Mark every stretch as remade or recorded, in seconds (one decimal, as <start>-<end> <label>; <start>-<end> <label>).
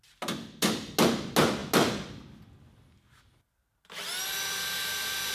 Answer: 0.0-5.3 recorded